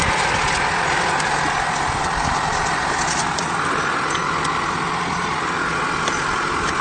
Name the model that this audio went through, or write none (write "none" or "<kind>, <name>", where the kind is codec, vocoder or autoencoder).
none